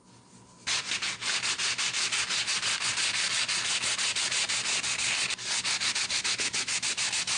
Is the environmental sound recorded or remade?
recorded